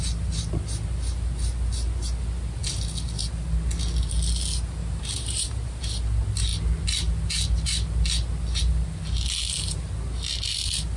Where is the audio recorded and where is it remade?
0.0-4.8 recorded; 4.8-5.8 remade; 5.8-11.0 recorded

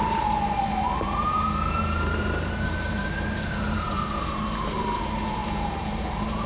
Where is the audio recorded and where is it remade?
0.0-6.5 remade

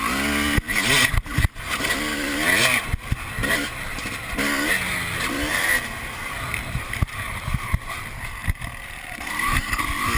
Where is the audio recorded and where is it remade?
0.0-3.4 recorded; 3.4-4.3 remade; 4.3-5.5 recorded; 5.5-8.0 remade; 8.0-8.4 recorded; 8.4-9.7 remade; 9.7-10.2 recorded

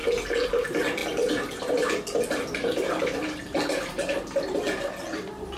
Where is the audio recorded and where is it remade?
0.0-1.0 recorded; 1.0-4.4 remade; 4.4-5.6 recorded